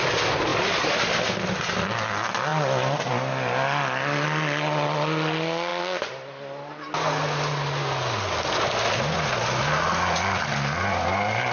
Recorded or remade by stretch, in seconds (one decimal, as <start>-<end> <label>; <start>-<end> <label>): 0.0-11.5 recorded